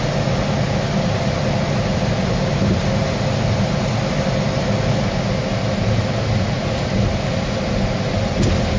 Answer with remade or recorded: recorded